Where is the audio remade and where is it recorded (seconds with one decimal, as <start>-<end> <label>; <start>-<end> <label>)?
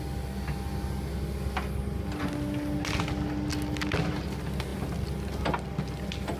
0.0-6.4 recorded